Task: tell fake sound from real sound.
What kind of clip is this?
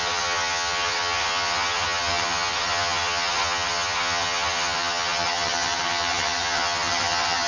fake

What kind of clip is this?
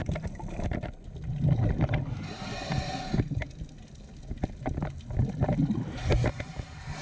real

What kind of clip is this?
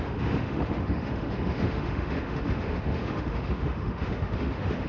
fake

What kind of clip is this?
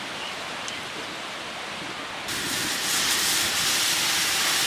real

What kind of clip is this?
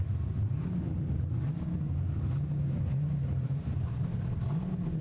real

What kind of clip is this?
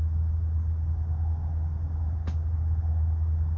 real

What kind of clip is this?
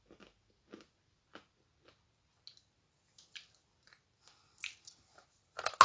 real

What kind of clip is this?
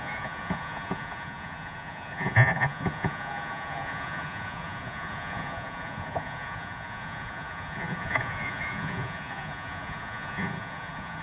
fake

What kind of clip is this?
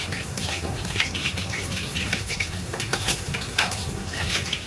fake